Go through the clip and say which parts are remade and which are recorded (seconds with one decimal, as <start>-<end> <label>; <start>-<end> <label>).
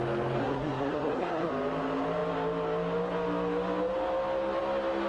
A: 0.0-0.4 recorded; 0.4-1.5 remade; 1.5-5.1 recorded